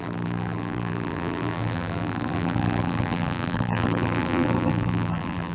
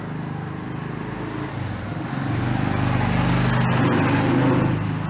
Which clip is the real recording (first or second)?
second